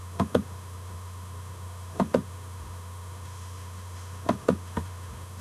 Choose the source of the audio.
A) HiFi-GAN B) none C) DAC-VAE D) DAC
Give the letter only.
C